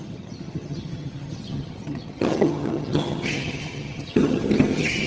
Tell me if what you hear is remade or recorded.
remade